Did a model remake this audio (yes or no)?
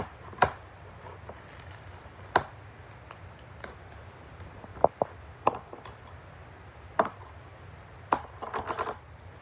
no